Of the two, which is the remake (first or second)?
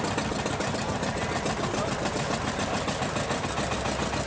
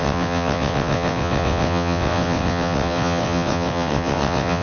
second